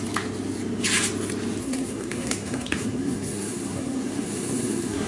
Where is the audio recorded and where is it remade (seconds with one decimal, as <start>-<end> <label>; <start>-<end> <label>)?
0.0-1.6 recorded; 1.6-5.1 remade